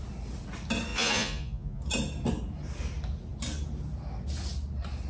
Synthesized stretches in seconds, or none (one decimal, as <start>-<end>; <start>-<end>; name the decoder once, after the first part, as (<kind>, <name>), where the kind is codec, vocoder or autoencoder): 0.9-1.8 (vocoder, Vocos)